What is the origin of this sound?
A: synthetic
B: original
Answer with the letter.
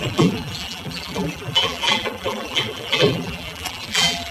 A